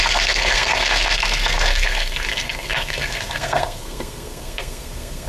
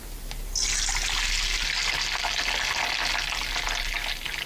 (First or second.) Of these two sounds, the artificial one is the first